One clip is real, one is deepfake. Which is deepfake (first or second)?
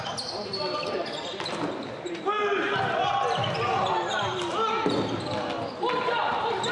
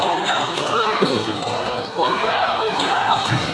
second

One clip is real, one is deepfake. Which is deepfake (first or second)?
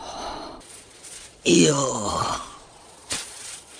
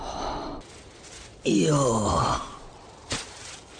first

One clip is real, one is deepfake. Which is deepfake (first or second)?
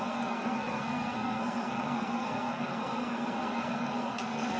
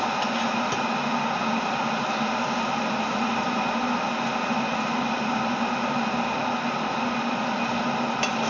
first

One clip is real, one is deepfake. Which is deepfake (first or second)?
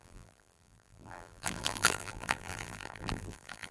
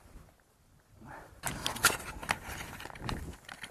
first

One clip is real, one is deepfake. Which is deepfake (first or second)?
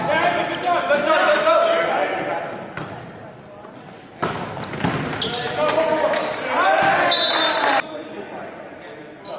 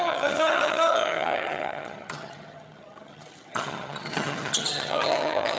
second